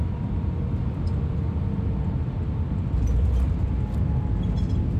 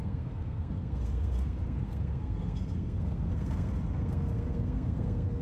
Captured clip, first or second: first